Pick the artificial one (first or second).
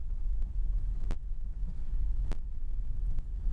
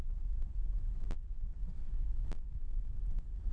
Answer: second